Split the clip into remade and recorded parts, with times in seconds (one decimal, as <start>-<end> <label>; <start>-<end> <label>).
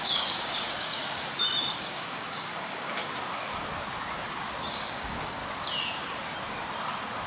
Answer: 0.0-1.0 remade; 1.0-1.8 recorded; 1.8-3.0 remade; 3.0-4.7 recorded; 4.7-5.4 remade; 5.4-7.3 recorded